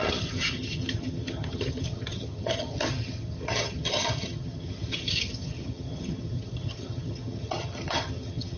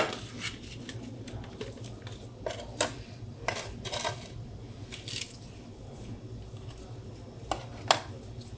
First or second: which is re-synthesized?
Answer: first